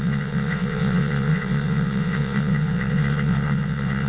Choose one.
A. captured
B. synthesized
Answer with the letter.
B